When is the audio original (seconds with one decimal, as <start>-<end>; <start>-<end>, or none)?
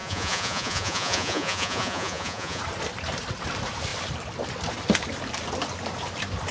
2.6-6.5